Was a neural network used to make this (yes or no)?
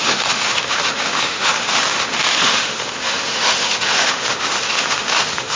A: yes